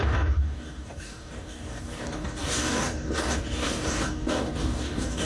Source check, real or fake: fake